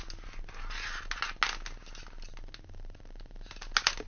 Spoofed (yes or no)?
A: no